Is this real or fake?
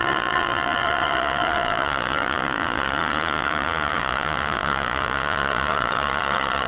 fake